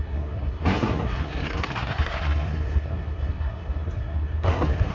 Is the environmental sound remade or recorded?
remade